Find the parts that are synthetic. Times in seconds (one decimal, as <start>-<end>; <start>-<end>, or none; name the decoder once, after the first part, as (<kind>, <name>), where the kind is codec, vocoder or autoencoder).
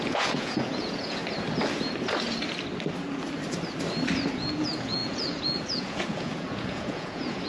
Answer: 0.0-1.2 (vocoder, Vocos); 4.3-7.5